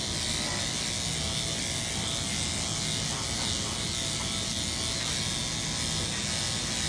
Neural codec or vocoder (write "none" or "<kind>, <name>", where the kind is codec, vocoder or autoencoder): none